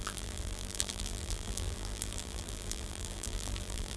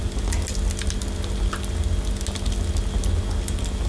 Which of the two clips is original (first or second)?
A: second